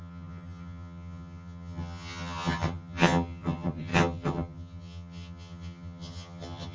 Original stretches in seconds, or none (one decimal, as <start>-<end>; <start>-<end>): none